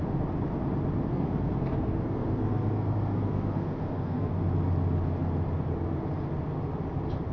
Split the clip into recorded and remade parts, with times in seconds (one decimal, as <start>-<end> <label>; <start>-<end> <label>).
0.0-1.1 recorded; 1.1-4.4 remade; 4.4-7.3 recorded